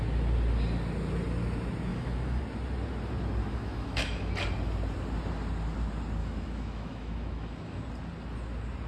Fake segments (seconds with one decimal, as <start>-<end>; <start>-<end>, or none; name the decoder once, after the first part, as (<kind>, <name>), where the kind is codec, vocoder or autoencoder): 1.9-2.4 (autoencoder, DAC-VAE); 3.4-4.3; 6.2-7.8